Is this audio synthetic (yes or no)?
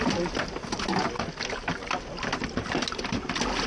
no